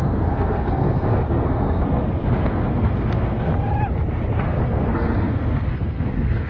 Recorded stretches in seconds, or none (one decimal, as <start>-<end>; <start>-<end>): 3.5-4.4